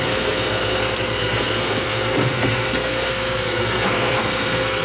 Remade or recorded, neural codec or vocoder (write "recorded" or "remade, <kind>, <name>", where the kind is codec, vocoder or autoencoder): remade, codec, SNAC